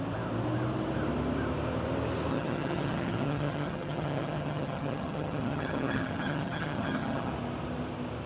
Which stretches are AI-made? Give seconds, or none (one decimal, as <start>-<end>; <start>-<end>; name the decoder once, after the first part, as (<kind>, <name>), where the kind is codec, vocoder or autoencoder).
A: 2.3-7.3 (vocoder, HiFi-GAN)